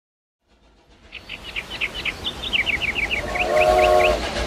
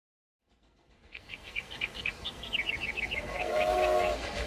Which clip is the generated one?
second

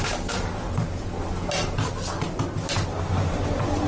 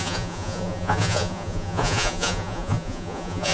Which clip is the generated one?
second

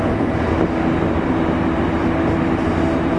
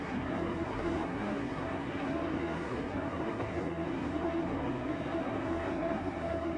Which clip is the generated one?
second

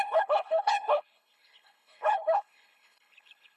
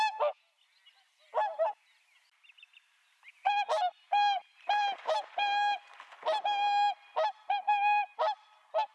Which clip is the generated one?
first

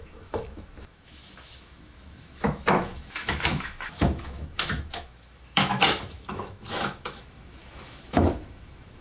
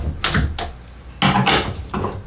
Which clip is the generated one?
first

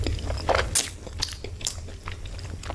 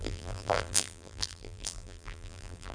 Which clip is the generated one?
second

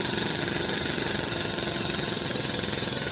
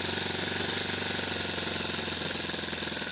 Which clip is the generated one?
first